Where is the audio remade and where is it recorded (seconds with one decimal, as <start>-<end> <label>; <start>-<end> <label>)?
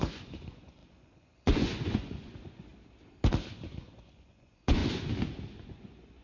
0.0-2.7 remade; 2.7-3.5 recorded; 3.5-4.8 remade; 4.8-5.5 recorded; 5.5-6.2 remade